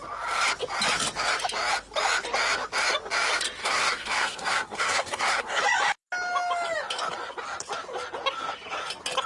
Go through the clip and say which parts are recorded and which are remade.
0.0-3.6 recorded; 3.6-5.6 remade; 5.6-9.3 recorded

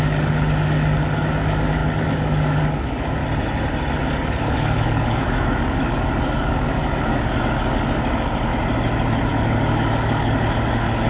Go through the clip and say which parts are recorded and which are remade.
0.0-3.2 remade; 3.2-4.1 recorded; 4.1-8.5 remade; 8.5-9.3 recorded; 9.3-11.1 remade

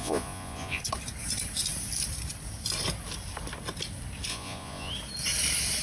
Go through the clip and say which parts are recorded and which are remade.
0.0-0.8 remade; 0.8-4.3 recorded; 4.3-4.9 remade; 4.9-5.8 recorded

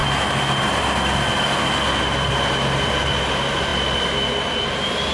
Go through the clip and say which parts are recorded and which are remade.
0.0-5.1 recorded

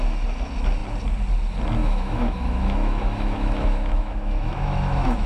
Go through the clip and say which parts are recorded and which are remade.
0.0-1.8 recorded; 1.8-5.3 remade

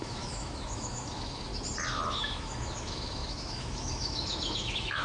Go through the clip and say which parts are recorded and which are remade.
0.0-1.5 remade; 1.5-2.1 recorded; 2.1-5.0 remade

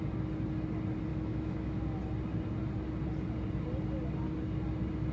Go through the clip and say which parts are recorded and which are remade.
0.0-1.1 recorded; 1.1-2.0 remade; 2.0-5.1 recorded

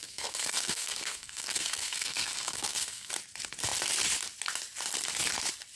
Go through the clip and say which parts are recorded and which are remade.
0.0-3.1 remade; 3.1-5.8 recorded